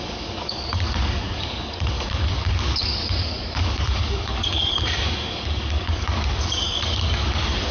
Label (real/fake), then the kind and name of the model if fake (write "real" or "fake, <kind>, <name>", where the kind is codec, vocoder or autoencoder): fake, codec, DAC